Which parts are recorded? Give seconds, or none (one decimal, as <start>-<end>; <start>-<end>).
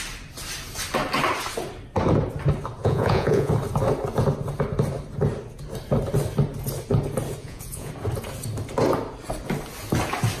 0.0-2.8; 3.5-7.4; 7.9-10.4